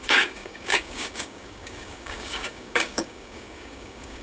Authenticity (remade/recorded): remade